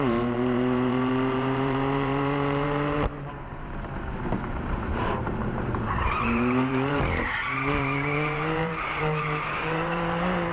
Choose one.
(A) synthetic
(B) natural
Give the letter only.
A